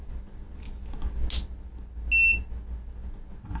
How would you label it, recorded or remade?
recorded